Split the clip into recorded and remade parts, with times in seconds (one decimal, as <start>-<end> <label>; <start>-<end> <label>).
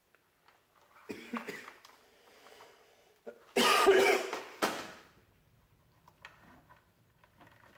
0.0-1.0 recorded; 1.0-2.6 remade; 2.6-4.3 recorded; 4.3-6.1 remade; 6.1-7.8 recorded